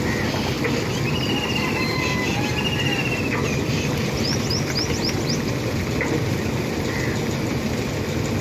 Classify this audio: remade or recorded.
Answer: recorded